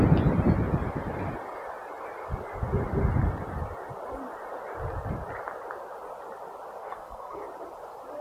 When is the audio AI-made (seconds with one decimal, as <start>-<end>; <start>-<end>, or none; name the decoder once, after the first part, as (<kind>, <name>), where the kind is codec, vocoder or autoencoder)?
6.8-7.4 (codec, SNAC)